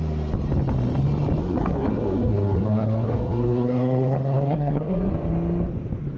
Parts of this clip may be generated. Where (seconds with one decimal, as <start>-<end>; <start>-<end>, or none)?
1.4-5.1